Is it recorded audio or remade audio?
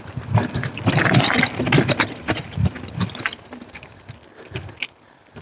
recorded